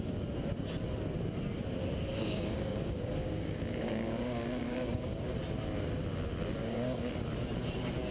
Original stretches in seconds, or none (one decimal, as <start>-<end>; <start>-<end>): 0.0-2.1; 5.2-6.6; 7.1-8.1